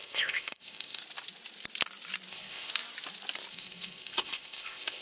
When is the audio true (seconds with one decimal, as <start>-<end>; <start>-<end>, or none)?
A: 1.0-2.3; 2.7-3.5